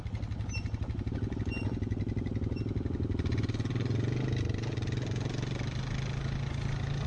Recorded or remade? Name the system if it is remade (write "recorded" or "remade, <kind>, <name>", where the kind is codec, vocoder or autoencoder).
recorded